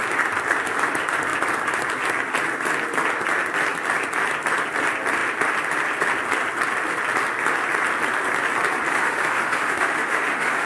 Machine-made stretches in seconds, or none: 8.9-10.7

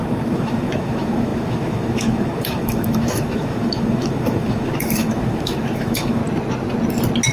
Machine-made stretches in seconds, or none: 0.0-6.2

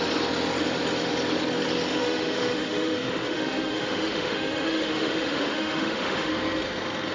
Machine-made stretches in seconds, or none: 2.0-6.3

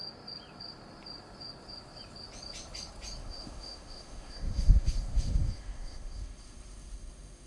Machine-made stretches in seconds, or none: 3.2-7.5

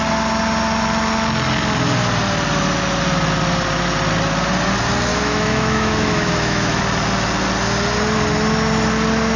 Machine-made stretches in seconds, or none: 5.1-6.8

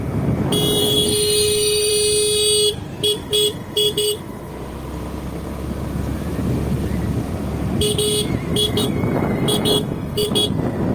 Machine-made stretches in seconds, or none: 0.8-1.9; 3.2-4.5; 8.5-10.3